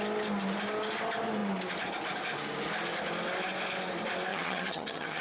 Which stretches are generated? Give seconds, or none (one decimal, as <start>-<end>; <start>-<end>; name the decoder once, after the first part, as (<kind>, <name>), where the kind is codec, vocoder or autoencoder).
4.3-5.2 (vocoder, HiFi-GAN)

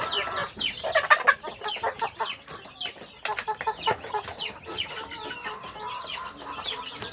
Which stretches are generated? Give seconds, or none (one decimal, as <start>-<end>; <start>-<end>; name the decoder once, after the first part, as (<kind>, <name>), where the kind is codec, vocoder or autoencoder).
none

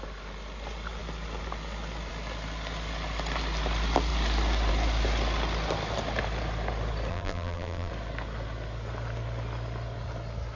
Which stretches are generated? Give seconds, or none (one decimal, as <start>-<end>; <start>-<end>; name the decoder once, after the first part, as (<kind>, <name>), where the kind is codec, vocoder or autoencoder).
7.1-7.9 (vocoder, BigVGAN v2)

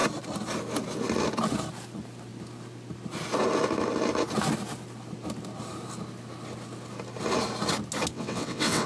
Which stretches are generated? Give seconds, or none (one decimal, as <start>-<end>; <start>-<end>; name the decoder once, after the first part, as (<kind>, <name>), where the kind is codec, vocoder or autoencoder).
8.1-8.9 (vocoder, WaveNeXt)